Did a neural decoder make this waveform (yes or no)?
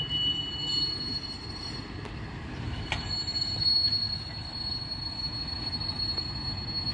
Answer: no